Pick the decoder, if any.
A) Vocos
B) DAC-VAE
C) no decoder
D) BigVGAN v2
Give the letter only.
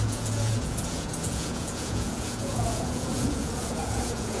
A